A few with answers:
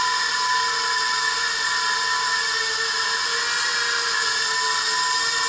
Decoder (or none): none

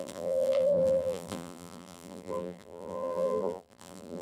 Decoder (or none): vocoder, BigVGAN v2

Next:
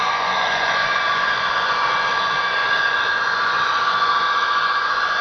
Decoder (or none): vocoder, Vocos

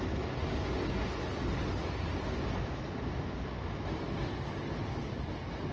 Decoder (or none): none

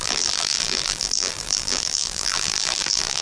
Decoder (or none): vocoder, BigVGAN v2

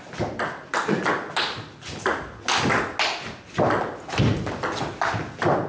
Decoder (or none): none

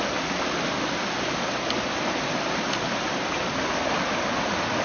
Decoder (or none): none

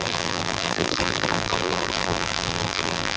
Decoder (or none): vocoder, BigVGAN v2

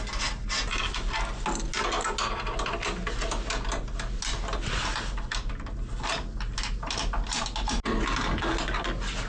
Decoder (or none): none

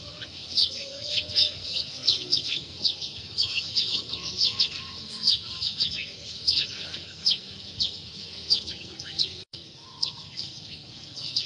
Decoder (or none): codec, SNAC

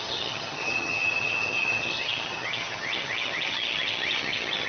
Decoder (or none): vocoder, HiFi-GAN